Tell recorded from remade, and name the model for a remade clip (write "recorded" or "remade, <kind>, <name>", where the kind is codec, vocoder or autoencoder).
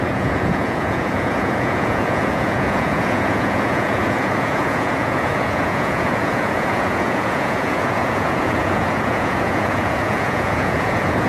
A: remade, vocoder, Vocos